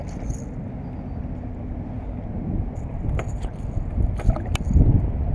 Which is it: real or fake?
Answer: real